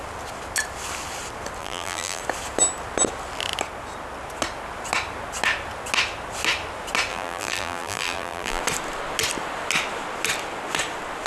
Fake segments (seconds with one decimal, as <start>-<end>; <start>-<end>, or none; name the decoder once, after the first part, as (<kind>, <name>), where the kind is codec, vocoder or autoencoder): 1.6-2.2 (vocoder, BigVGAN v2); 7.1-8.6